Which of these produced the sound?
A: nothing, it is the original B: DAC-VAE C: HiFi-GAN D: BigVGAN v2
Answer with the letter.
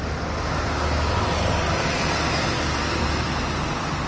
A